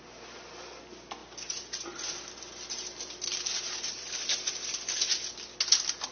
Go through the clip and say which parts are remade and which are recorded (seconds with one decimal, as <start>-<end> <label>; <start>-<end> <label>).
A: 0.0-6.1 recorded